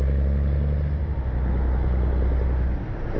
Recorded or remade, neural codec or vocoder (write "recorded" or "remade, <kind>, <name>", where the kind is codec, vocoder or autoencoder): recorded